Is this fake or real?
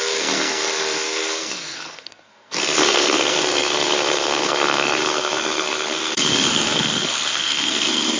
fake